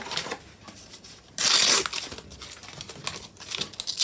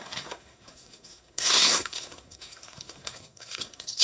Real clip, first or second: first